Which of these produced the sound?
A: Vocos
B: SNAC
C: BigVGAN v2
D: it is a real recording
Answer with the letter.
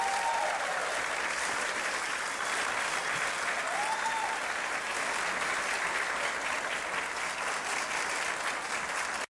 D